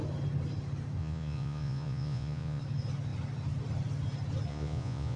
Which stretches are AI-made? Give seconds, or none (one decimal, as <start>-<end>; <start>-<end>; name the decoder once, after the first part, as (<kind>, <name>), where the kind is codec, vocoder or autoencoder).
1.0-2.6 (vocoder, Vocos); 4.5-5.2